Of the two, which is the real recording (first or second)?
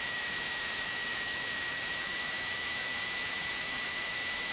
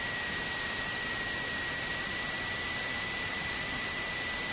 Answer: second